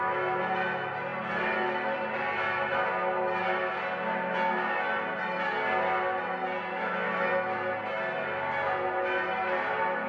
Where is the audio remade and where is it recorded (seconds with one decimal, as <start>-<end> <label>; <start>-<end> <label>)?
0.0-10.1 recorded